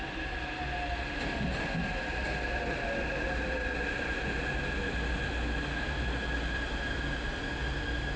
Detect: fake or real real